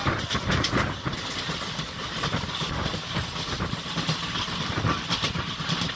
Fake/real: real